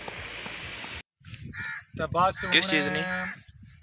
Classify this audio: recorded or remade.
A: recorded